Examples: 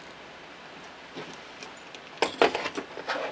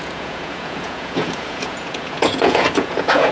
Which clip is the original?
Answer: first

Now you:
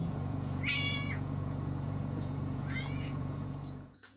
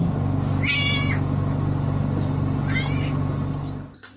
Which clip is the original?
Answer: second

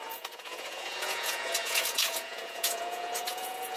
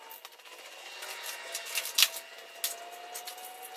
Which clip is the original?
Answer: second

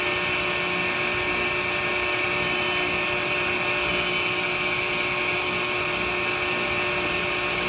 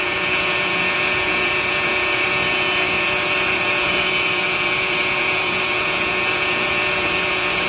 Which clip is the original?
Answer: first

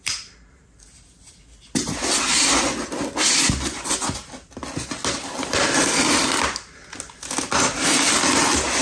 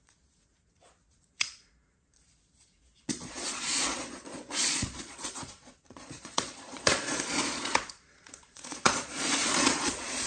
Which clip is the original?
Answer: first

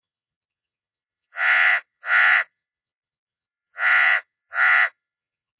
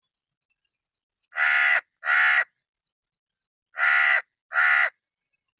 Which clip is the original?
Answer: second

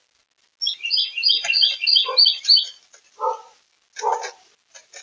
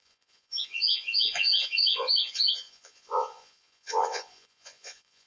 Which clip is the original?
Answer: first